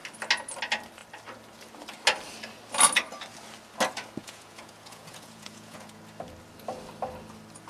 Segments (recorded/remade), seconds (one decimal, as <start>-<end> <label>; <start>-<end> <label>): 0.0-4.2 recorded; 4.2-6.0 remade; 6.0-7.7 recorded